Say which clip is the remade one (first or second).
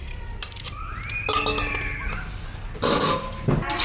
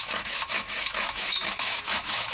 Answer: second